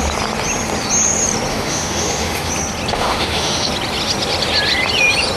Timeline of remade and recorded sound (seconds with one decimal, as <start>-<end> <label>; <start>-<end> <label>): 0.0-1.5 recorded; 1.5-2.5 remade; 2.5-2.9 recorded; 2.9-3.7 remade; 3.7-5.4 recorded